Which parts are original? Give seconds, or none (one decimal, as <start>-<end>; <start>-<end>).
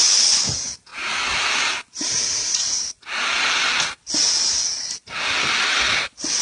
0.0-6.4